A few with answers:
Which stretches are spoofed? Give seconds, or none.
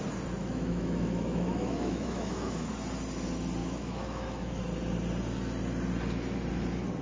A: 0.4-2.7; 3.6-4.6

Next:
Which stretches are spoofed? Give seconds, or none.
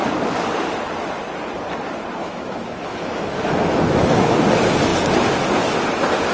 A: 2.2-4.5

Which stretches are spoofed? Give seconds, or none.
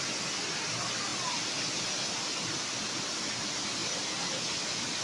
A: none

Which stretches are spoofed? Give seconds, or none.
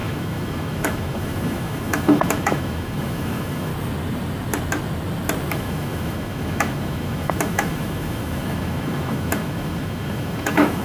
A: 0.0-3.7; 5.5-10.8